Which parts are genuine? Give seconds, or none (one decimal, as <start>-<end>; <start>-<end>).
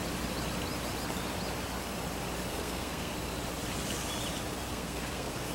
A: 0.0-2.5; 3.1-4.7